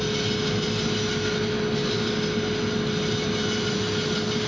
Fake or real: real